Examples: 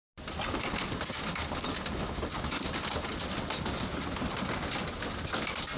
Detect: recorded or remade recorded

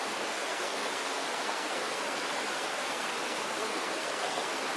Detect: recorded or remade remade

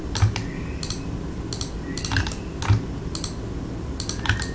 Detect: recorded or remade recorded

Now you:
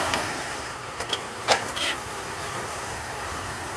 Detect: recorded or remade remade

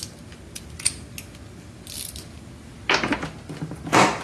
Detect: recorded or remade recorded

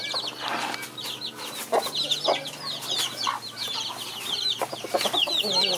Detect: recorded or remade recorded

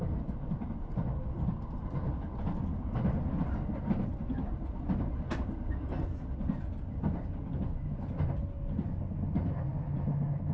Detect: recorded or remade recorded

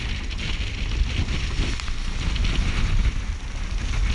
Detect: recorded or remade recorded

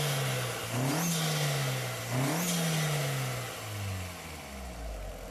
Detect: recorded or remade recorded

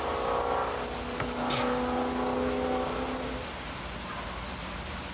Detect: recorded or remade recorded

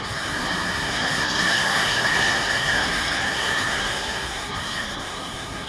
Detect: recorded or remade remade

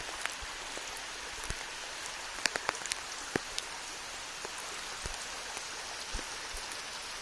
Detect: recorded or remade recorded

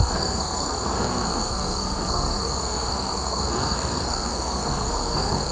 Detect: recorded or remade remade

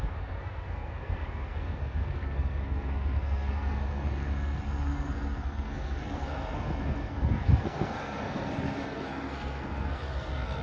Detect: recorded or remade remade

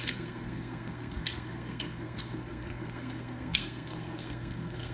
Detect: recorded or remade remade